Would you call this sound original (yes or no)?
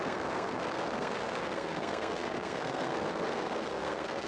no